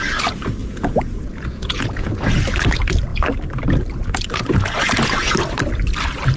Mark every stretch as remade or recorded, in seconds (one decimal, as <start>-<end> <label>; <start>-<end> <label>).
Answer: 0.0-0.6 recorded; 0.6-2.1 remade; 2.1-6.4 recorded

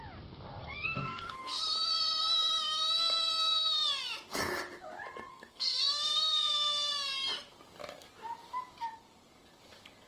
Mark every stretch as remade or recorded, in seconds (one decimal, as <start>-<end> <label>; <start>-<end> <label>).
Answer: 0.0-0.6 recorded; 0.6-1.6 remade; 1.6-5.3 recorded; 5.3-6.9 remade; 6.9-10.1 recorded